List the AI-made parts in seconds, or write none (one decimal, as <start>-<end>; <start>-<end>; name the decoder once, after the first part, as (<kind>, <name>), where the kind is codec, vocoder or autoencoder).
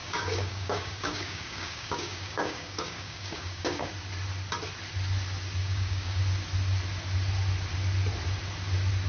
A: 0.0-3.9 (codec, DAC); 5.6-6.2